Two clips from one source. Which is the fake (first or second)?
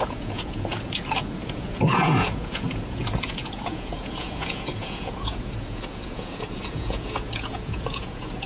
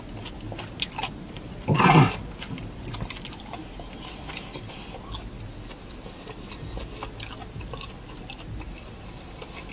first